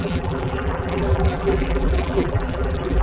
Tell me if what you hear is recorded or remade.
remade